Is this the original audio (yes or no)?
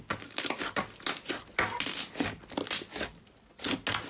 yes